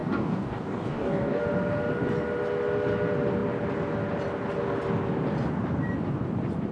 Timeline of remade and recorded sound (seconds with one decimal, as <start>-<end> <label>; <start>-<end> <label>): 0.0-1.4 remade; 1.4-6.7 recorded